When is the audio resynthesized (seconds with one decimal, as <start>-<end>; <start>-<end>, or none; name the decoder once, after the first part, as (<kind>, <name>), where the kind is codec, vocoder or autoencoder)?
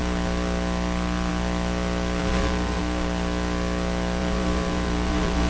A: 2.2-2.8 (vocoder, BigVGAN v2); 4.2-5.5